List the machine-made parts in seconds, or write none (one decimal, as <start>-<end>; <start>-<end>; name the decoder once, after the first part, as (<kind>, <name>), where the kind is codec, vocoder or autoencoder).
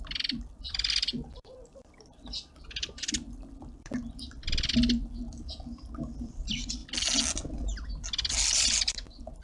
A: 0.0-4.0 (vocoder, BigVGAN v2); 6.0-6.8; 8.3-9.4